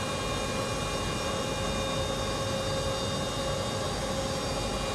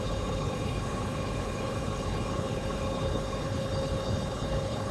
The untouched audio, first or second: first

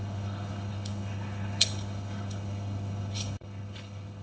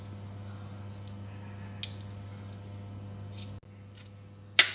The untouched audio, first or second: second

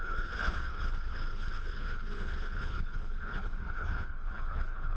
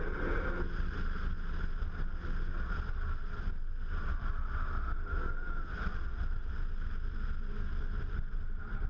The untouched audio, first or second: second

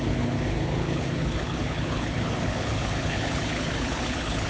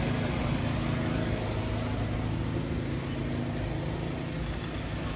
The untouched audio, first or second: second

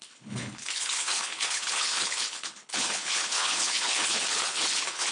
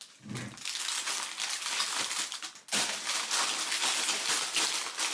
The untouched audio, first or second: second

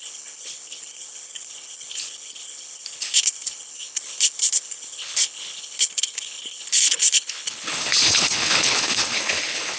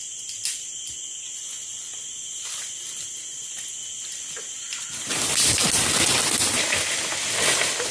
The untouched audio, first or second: second